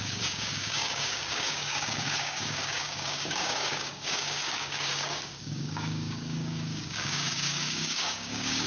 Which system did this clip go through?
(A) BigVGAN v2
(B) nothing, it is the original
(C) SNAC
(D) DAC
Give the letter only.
D